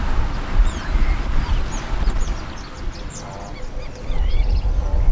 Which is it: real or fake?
real